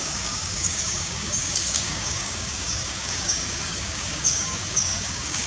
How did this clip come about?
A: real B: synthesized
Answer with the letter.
B